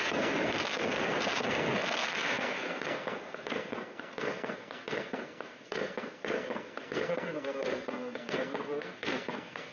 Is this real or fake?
fake